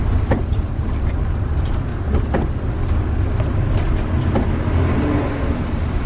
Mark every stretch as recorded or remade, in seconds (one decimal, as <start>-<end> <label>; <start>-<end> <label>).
0.0-1.9 remade; 1.9-5.6 recorded; 5.6-6.1 remade